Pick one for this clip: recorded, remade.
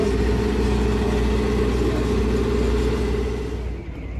recorded